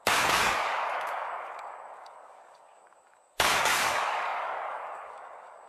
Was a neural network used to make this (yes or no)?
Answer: yes